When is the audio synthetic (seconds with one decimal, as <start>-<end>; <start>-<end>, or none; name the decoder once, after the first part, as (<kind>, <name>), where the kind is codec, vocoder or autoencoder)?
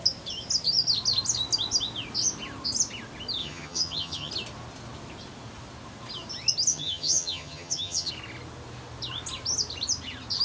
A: 3.4-4.3 (vocoder, HiFi-GAN); 6.7-8.1